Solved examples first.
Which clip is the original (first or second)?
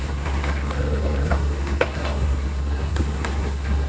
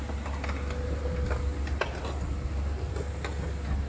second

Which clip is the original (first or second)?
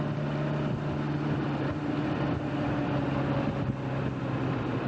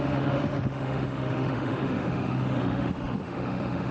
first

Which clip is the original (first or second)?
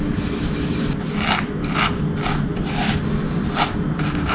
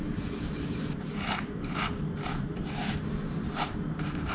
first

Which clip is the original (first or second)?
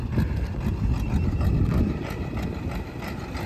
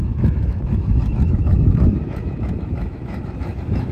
first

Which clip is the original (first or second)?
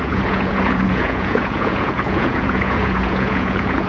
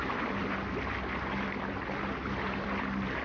second